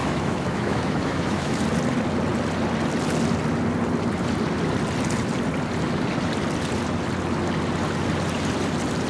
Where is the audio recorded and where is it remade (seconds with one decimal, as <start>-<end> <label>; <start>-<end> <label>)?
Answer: 0.0-1.6 remade; 1.6-9.1 recorded